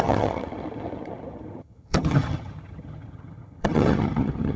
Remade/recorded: remade